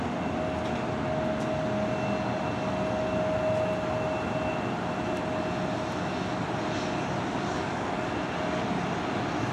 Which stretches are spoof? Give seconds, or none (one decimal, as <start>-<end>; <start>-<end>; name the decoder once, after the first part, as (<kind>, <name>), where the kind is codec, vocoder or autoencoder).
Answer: 7.3-8.1 (codec, DAC)